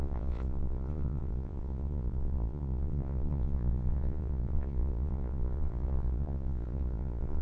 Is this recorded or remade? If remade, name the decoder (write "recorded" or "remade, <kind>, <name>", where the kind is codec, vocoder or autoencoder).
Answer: remade, vocoder, Vocos